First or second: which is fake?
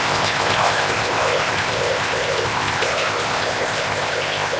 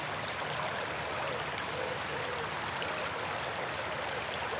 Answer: first